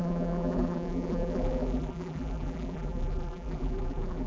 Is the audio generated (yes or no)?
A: yes